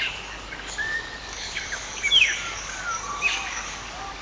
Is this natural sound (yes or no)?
no